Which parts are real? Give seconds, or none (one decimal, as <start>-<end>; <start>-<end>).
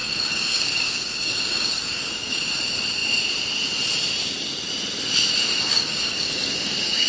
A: 2.5-5.7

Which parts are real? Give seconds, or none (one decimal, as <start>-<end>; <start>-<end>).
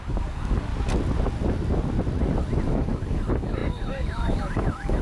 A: 0.7-2.7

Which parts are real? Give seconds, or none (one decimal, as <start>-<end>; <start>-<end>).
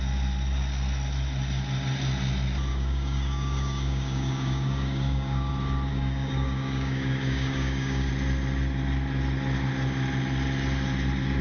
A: 0.0-2.7; 5.5-5.9; 8.1-11.4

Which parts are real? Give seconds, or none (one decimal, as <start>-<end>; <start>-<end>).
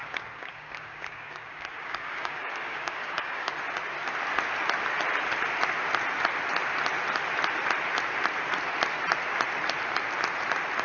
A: 3.5-10.8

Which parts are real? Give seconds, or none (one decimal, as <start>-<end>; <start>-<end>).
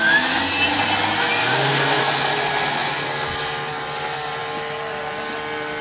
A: 0.0-1.4; 2.1-5.8